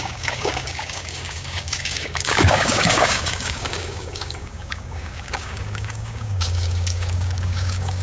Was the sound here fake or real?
fake